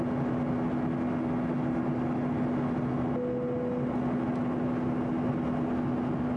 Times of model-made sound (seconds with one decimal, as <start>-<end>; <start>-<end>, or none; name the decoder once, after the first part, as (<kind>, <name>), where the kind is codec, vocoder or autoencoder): none